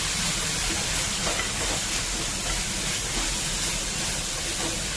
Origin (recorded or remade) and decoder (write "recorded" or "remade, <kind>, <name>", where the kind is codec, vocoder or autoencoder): recorded